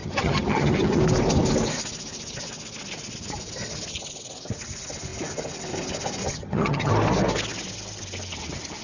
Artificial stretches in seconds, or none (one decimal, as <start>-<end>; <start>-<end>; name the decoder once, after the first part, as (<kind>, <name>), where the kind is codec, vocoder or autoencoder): 0.0-1.0 (vocoder, HiFi-GAN); 6.2-6.9